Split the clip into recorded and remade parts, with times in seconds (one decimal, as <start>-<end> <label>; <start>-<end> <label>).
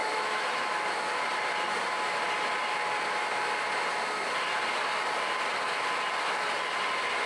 0.0-0.6 remade; 0.6-7.3 recorded